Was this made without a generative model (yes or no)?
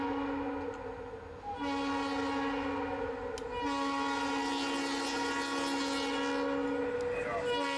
yes